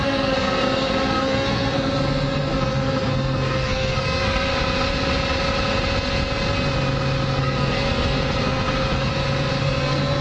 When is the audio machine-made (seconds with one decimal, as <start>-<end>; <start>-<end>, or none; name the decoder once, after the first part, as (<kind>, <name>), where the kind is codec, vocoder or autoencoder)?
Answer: 0.0-4.5 (codec, SNAC); 7.4-9.1; 9.6-10.2